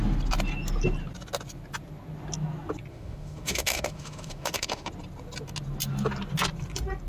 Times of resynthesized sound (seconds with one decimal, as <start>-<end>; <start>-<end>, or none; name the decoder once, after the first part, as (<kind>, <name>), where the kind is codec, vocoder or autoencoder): 2.9-4.9 (autoencoder, DAC-VAE)